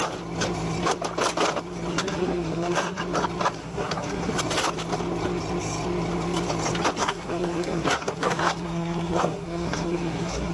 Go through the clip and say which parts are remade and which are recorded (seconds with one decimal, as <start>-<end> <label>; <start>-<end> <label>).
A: 0.0-1.9 recorded; 1.9-3.0 remade; 3.0-3.6 recorded; 3.6-4.3 remade; 4.3-7.0 recorded; 7.0-10.5 remade